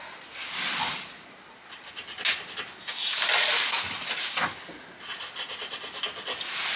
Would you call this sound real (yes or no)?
yes